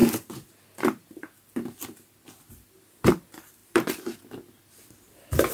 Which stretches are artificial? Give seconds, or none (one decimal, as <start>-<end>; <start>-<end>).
3.6-4.2